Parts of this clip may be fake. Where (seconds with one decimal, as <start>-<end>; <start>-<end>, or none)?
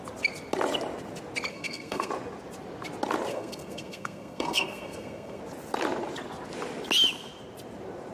1.5-2.1; 3.3-5.4